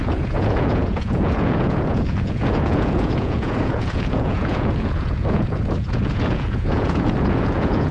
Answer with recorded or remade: remade